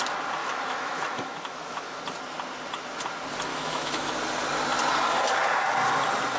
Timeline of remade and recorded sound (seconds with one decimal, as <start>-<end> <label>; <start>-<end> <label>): 0.0-0.4 recorded; 0.4-2.0 remade; 2.0-3.5 recorded; 3.5-4.1 remade; 4.1-6.4 recorded